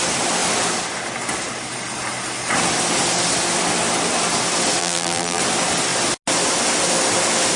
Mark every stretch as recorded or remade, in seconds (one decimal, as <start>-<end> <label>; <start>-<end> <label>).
0.0-4.8 recorded; 4.8-5.4 remade; 5.4-7.6 recorded